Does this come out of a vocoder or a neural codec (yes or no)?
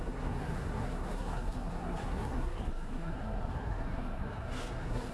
yes